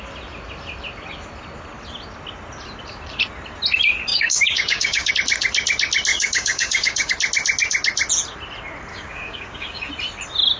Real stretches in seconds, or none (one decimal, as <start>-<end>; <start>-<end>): 0.0-4.1; 5.1-6.1; 7.1-8.9; 9.9-10.6